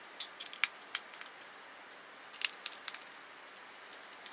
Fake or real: real